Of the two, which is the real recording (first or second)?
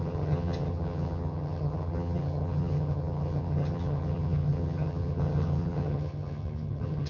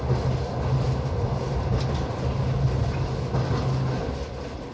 second